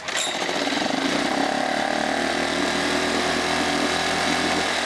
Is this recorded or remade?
remade